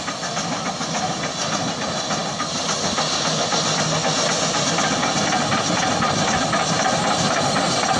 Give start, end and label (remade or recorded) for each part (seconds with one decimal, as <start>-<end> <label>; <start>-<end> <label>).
0.0-8.0 recorded